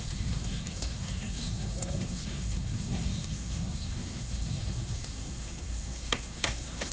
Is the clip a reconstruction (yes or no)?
yes